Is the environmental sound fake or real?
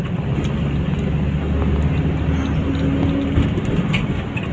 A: real